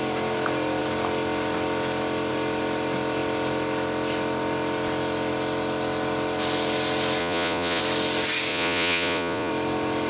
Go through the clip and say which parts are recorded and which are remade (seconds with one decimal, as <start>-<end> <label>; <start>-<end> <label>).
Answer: 0.0-7.2 recorded; 7.2-7.8 remade; 7.8-8.5 recorded; 8.5-9.5 remade; 9.5-10.1 recorded